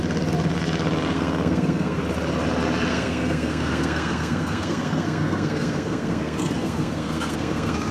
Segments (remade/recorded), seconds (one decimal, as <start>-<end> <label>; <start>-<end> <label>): 0.0-1.1 recorded; 1.1-2.0 remade; 2.0-2.9 recorded; 2.9-7.9 remade